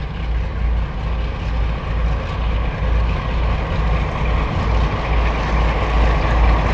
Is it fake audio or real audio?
real